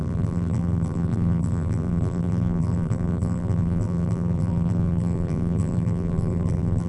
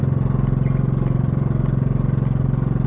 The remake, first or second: first